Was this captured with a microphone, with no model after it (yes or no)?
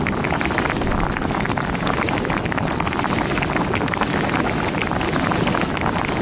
yes